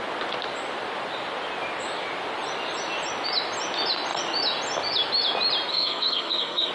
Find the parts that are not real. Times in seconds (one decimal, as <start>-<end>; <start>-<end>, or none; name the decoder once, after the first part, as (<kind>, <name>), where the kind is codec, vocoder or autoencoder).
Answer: 5.7-6.7 (codec, SNAC)